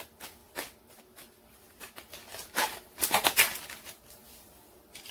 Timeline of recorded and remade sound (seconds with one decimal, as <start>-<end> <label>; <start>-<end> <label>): 0.0-5.1 recorded